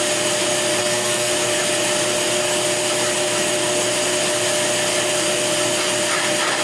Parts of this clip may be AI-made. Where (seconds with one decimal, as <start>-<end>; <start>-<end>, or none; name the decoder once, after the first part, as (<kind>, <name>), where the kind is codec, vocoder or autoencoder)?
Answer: 0.8-1.3 (codec, SNAC)